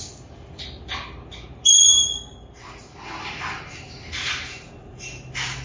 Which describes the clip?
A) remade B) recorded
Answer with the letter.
B